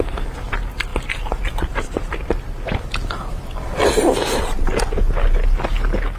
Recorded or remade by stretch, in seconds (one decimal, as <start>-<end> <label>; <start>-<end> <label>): 0.0-0.9 recorded; 0.9-4.4 remade; 4.4-6.2 recorded